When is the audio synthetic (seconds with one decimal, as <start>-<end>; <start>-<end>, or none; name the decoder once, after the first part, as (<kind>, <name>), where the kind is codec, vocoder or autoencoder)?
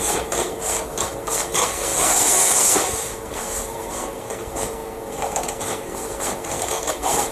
0.0-7.3 (codec, SNAC)